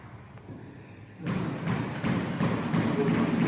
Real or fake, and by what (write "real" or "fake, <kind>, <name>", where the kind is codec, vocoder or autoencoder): real